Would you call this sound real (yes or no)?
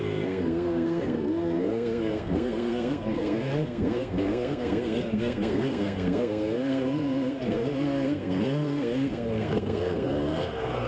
no